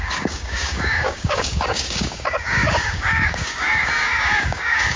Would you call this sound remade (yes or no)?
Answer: yes